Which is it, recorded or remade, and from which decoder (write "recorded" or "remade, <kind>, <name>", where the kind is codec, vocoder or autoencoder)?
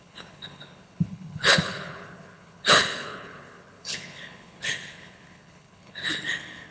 remade, codec, HILCodec